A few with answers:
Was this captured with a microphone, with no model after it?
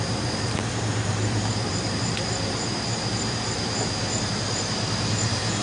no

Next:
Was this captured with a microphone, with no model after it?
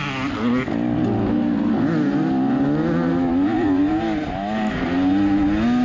yes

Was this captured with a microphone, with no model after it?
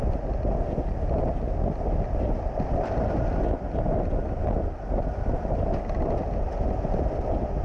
yes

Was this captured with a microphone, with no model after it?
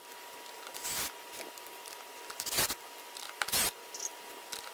yes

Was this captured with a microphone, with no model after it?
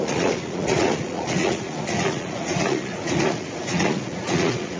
no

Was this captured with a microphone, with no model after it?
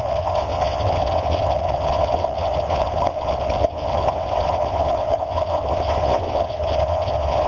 no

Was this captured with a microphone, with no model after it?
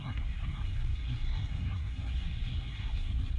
no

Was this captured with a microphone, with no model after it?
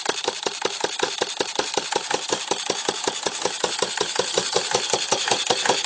yes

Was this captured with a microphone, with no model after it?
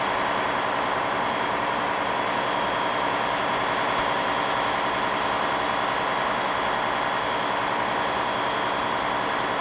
yes